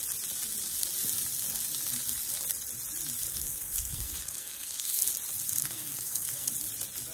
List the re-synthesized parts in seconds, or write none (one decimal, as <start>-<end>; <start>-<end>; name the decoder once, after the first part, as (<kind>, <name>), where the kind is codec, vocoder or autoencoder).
3.3-5.1 (codec, SNAC); 5.6-6.5